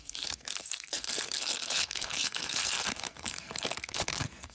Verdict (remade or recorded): remade